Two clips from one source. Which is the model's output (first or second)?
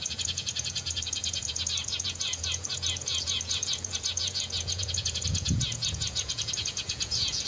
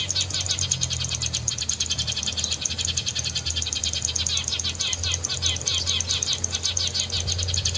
first